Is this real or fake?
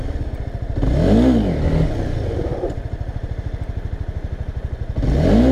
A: real